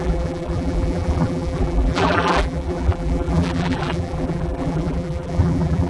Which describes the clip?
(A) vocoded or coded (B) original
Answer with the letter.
A